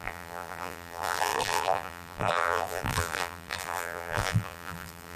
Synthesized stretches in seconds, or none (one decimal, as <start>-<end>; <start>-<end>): 0.0-5.2